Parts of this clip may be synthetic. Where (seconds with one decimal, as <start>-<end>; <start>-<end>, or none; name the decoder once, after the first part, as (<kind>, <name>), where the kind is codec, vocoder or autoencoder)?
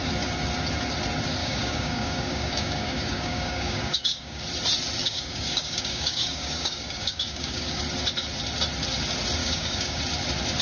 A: 1.4-4.4 (codec, DAC); 5.0-7.8; 9.4-10.0